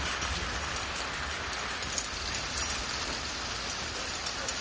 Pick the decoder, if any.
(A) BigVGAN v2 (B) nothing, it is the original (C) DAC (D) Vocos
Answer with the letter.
B